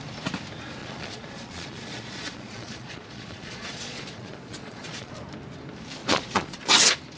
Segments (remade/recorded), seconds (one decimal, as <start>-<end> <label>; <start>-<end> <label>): 0.0-0.8 recorded; 0.8-5.1 remade; 5.1-6.0 recorded; 6.0-6.6 remade; 6.6-7.2 recorded